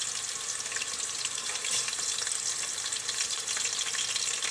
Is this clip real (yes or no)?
yes